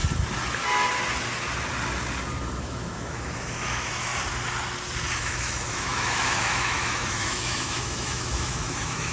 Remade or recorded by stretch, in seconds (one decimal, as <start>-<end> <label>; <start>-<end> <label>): 0.0-2.6 recorded; 2.6-4.1 remade; 4.1-5.2 recorded; 5.2-9.1 remade

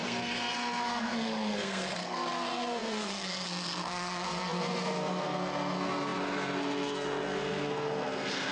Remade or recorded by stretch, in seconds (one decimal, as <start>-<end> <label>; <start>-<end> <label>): 0.0-8.5 remade

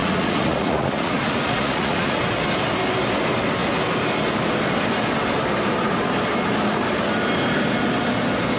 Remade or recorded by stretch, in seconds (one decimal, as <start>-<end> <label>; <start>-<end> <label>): 0.0-2.2 remade; 2.2-8.6 recorded

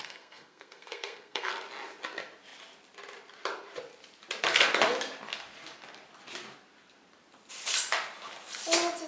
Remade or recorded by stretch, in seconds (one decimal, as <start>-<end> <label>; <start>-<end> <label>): 0.0-1.5 remade; 1.5-9.1 recorded

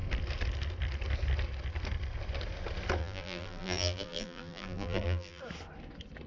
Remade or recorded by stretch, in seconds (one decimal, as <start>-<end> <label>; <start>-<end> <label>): 0.0-3.0 recorded; 3.0-5.4 remade; 5.4-6.3 recorded

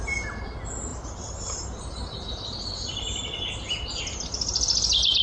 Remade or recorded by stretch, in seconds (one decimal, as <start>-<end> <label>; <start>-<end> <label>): 0.0-0.9 recorded; 0.9-4.0 remade; 4.0-5.2 recorded

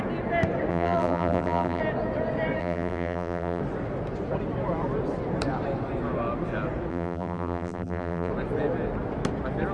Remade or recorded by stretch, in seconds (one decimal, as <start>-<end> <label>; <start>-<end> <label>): 0.0-0.7 recorded; 0.7-1.8 remade; 1.8-2.6 recorded; 2.6-3.6 remade; 3.6-6.9 recorded; 6.9-8.3 remade; 8.3-9.7 recorded